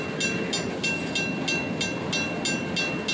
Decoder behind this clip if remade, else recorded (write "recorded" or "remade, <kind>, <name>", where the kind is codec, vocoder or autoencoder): recorded